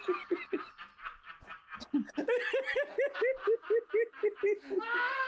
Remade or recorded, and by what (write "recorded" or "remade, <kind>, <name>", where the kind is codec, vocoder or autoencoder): recorded